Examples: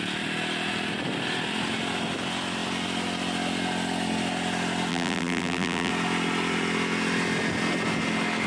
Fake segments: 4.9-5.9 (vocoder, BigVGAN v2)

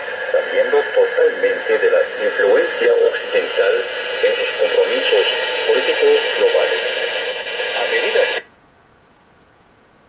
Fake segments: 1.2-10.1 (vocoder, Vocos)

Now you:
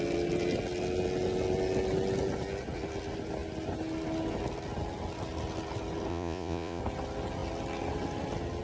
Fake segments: 6.1-6.8 (vocoder, Vocos)

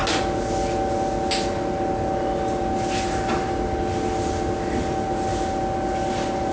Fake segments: none

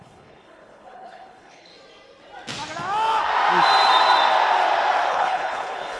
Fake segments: 0.0-1.7 (codec, HILCodec); 5.1-6.0

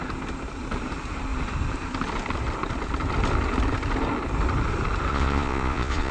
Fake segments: 5.1-6.1 (vocoder, Vocos)